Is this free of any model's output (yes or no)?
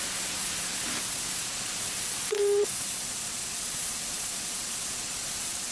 no